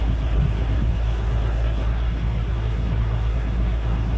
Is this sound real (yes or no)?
no